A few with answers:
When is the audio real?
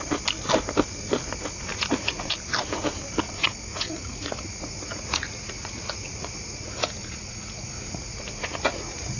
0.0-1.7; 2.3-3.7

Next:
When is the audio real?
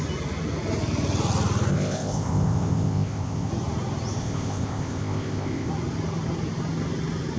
0.0-1.7; 3.5-4.2; 5.7-7.4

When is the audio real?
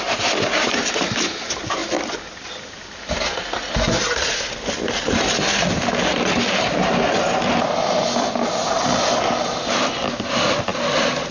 0.0-11.3